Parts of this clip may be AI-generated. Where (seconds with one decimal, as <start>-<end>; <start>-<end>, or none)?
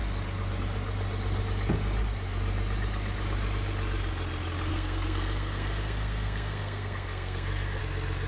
4.7-7.8